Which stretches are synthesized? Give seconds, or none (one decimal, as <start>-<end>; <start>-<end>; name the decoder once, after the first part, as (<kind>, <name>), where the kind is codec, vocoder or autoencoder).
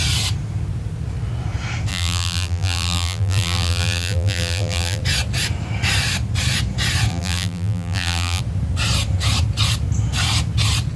1.9-5.0 (vocoder, BigVGAN v2); 7.1-8.4